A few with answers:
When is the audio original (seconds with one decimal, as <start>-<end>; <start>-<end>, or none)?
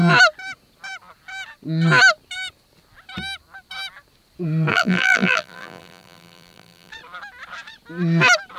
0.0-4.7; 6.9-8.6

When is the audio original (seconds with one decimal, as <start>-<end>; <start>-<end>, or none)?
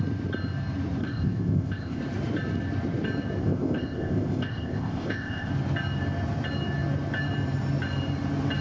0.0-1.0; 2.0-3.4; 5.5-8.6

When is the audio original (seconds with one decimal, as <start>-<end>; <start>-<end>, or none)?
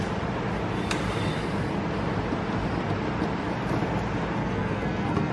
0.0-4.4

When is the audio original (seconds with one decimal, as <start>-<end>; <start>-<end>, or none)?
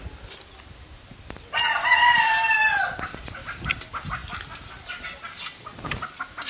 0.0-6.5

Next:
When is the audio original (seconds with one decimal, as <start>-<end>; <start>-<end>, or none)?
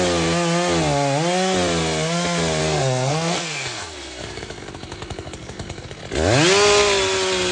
0.0-2.6; 6.0-7.5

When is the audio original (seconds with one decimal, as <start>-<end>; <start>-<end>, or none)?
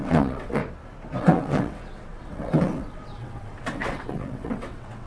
0.6-1.2